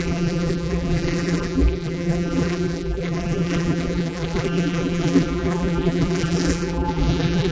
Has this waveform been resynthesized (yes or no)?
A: yes